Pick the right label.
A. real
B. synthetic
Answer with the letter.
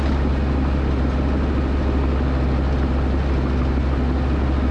A